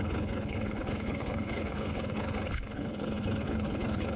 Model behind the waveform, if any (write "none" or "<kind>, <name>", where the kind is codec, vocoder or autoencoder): codec, HILCodec